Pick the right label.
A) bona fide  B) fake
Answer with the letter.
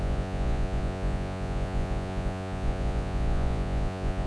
B